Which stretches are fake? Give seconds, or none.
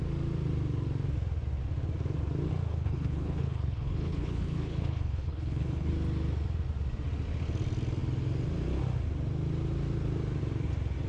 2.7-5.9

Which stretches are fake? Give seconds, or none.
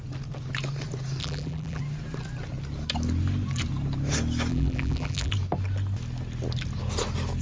1.2-1.8; 4.5-5.3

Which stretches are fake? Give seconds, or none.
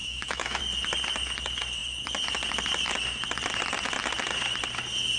0.0-0.6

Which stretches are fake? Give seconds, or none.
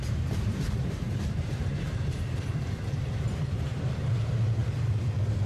0.0-5.5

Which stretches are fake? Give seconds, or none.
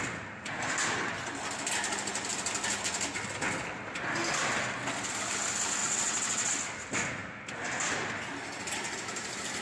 5.8-6.5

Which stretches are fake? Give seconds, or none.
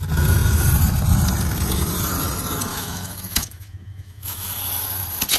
2.7-4.6